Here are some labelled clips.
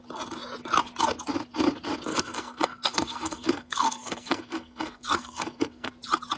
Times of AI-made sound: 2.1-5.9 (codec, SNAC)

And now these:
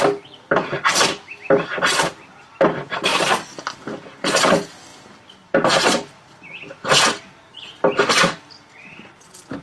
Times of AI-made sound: none